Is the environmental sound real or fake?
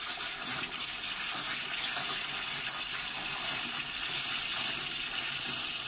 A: real